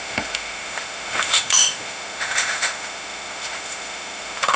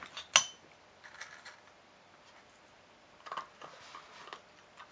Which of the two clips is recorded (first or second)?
second